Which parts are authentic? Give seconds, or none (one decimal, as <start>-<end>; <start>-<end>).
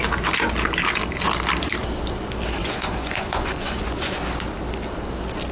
0.0-2.6; 4.2-5.5